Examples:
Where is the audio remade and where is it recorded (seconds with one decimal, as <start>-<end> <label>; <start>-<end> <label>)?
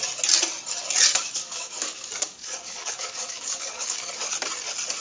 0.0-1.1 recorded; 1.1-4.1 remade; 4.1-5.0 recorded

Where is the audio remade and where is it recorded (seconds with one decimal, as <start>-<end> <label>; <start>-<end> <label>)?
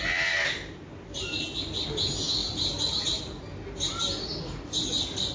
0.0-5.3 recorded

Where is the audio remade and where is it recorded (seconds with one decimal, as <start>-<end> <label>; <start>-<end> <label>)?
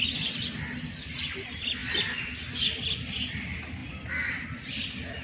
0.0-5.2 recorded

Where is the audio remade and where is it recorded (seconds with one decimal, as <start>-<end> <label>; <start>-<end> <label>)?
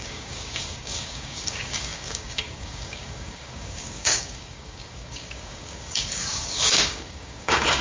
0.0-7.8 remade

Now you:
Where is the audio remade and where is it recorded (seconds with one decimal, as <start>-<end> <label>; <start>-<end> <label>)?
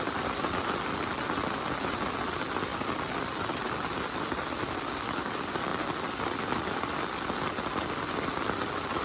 0.0-9.0 recorded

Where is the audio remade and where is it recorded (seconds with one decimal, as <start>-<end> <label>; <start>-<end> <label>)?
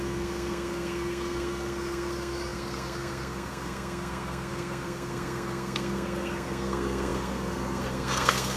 0.0-8.6 remade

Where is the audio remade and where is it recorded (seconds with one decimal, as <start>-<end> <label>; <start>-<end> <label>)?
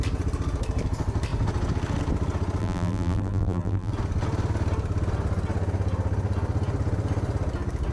0.0-2.6 recorded; 2.6-3.9 remade; 3.9-7.9 recorded